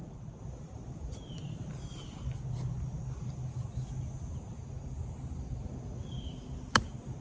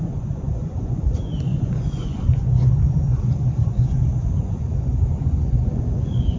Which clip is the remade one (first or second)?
second